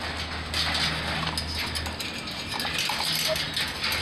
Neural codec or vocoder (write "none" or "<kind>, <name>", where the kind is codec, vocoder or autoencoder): none